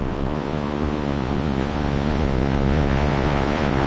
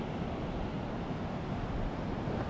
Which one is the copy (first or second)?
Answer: first